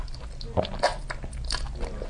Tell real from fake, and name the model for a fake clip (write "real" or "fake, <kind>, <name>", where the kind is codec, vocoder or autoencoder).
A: real